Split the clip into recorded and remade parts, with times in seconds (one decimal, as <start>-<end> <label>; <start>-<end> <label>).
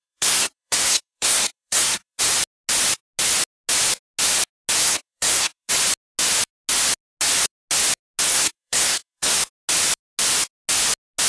0.0-2.2 remade; 2.2-4.8 recorded; 4.8-5.7 remade; 5.7-8.3 recorded; 8.3-9.3 remade; 9.3-11.3 recorded